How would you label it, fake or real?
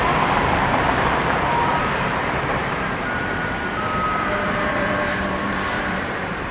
fake